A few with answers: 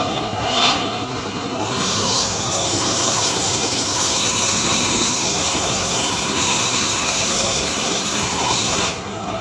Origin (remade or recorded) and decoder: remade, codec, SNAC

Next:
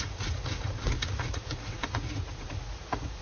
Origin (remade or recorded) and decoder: remade, vocoder, Vocos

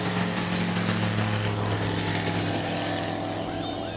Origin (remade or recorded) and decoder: recorded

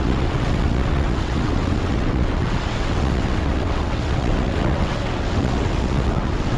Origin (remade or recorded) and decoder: remade, vocoder, WaveNeXt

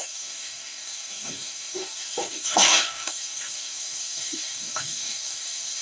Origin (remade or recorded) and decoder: remade, codec, DAC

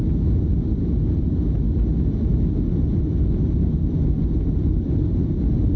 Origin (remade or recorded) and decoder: remade, vocoder, BigVGAN v2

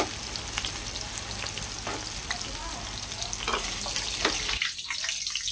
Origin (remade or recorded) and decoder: recorded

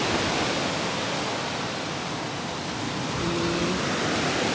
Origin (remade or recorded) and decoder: recorded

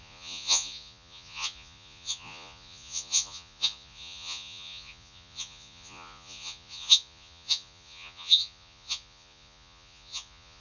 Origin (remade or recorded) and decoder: remade, vocoder, Vocos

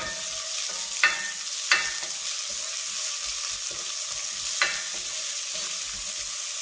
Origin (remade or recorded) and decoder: recorded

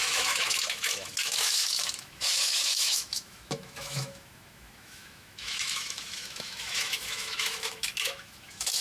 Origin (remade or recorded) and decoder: remade, autoencoder, DAC-VAE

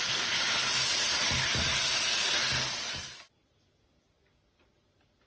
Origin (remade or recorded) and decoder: recorded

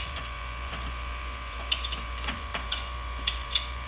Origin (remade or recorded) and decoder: remade, vocoder, Vocos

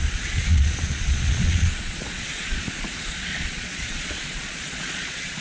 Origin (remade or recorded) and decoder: remade, vocoder, Vocos